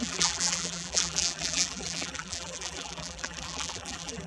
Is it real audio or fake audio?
fake